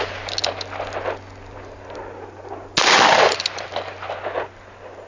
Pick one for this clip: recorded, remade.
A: recorded